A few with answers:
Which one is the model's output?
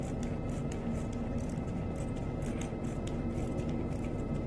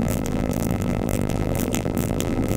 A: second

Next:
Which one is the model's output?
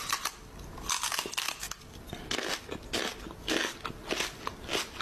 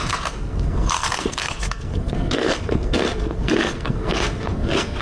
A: second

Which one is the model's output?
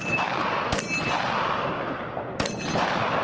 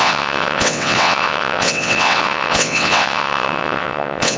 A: second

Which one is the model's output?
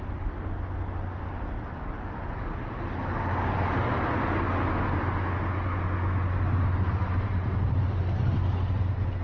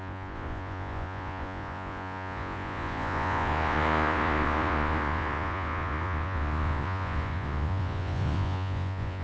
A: second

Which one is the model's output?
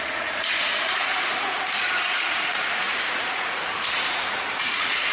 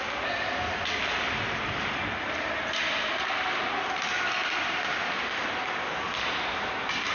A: first